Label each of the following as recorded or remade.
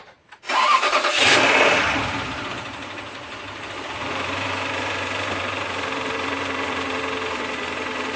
remade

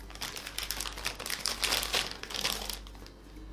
recorded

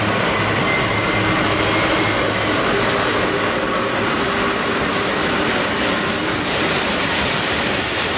recorded